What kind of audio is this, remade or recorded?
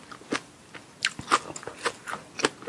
recorded